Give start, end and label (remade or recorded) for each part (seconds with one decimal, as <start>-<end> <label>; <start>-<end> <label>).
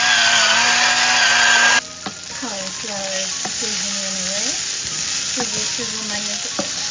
0.0-6.9 recorded